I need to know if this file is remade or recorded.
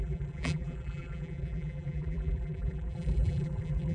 remade